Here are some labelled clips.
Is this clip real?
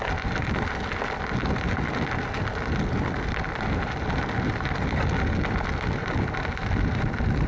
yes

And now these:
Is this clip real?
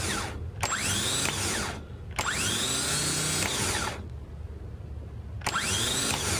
yes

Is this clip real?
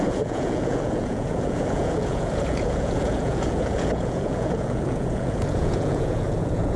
no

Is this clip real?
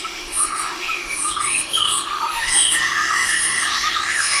no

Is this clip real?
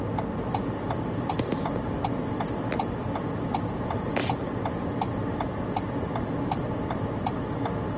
yes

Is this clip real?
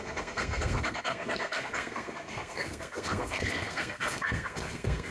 no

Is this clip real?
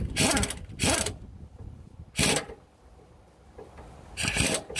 yes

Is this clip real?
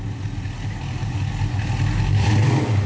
yes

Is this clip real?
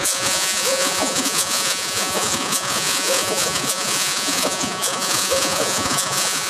no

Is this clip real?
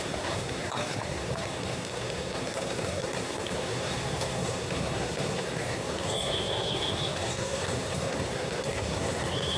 no